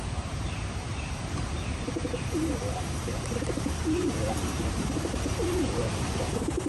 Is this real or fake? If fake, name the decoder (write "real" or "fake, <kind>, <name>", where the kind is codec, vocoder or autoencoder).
fake, vocoder, BigVGAN v2